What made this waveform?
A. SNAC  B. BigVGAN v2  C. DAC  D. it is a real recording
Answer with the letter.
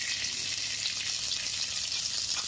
D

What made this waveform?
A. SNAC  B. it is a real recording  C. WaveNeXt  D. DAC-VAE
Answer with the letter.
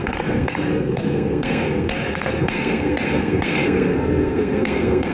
A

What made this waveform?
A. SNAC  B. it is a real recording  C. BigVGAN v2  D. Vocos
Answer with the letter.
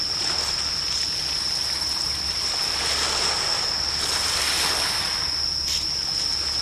B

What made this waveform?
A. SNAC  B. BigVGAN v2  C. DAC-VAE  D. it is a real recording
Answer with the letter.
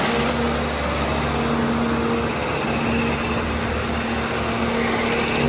D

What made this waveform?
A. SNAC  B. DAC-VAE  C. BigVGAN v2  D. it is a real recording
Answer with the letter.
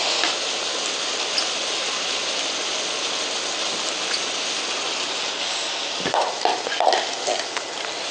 D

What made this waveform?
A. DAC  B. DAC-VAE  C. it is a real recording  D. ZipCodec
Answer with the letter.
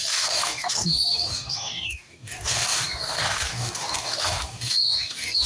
A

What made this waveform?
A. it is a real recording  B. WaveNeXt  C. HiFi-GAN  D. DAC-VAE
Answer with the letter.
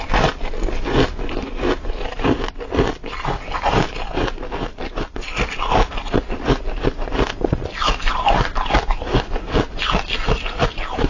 A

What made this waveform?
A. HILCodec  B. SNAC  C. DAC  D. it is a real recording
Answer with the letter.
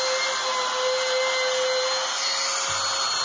D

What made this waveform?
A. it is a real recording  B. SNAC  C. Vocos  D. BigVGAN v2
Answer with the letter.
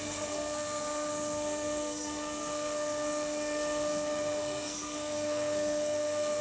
B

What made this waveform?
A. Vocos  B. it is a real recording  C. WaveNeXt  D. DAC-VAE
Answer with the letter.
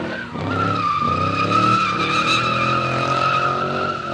B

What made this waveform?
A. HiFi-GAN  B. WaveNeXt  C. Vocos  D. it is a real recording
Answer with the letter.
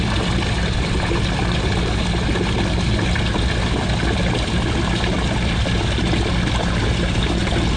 D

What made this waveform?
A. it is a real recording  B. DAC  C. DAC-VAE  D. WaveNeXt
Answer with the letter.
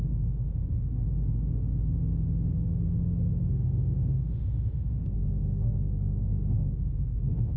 C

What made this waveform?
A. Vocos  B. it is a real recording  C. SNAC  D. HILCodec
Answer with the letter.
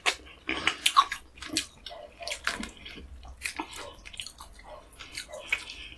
B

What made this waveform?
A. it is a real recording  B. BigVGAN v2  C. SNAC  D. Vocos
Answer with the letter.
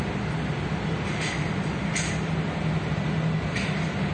A